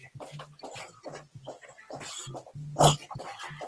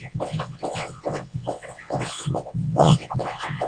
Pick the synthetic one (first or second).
second